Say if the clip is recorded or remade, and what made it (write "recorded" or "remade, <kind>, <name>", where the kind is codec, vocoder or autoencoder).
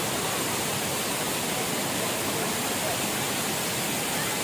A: recorded